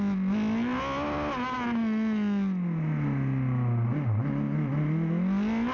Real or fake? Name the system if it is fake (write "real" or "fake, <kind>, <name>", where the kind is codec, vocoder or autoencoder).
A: real